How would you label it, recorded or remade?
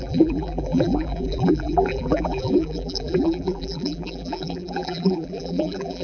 remade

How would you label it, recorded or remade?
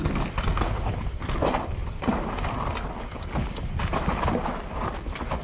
recorded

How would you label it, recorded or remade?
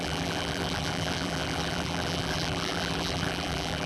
remade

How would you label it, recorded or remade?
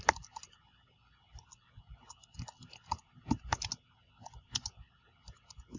recorded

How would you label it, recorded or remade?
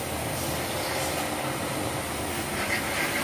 recorded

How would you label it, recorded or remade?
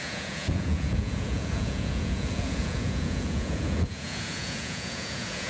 remade